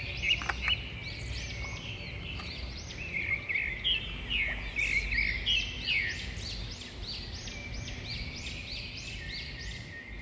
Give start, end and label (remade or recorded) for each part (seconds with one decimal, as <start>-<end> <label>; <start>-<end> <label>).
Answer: 0.0-10.2 recorded